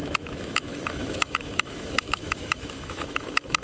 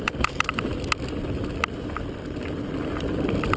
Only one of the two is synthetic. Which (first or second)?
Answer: first